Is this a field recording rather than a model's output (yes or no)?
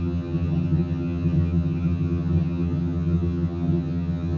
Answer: no